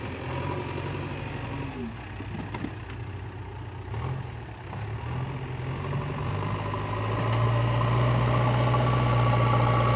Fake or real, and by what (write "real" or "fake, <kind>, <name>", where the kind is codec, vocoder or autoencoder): real